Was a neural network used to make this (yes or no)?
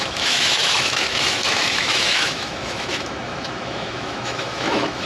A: yes